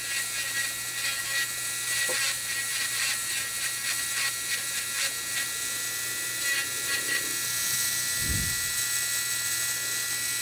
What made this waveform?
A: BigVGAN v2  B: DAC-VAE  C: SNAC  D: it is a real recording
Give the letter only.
D